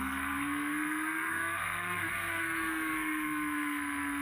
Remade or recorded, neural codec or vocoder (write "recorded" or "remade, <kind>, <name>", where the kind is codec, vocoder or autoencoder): remade, codec, SNAC